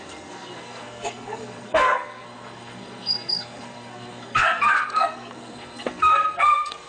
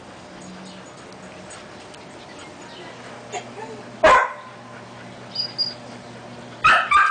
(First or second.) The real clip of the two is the second